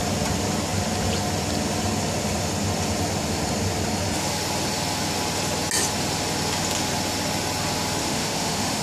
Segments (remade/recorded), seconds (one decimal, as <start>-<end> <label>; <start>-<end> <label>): 0.0-8.0 recorded; 8.0-8.8 remade